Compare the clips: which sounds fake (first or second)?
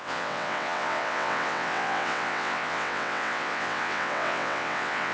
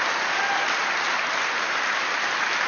first